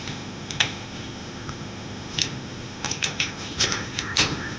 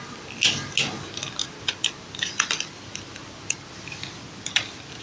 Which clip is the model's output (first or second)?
first